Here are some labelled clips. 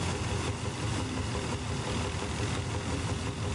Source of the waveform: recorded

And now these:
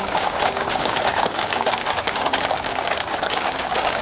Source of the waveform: remade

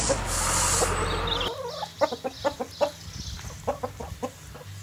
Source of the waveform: recorded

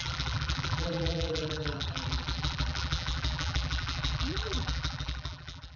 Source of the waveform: remade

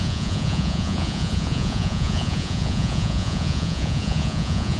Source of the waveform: remade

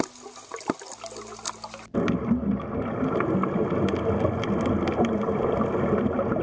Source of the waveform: recorded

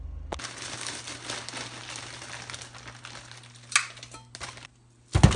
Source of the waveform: recorded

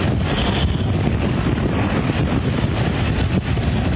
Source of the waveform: recorded